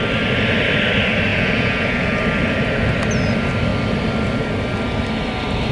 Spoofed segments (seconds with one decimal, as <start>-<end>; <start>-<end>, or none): 1.3-2.2